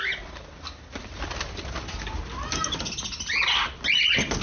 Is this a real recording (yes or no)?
yes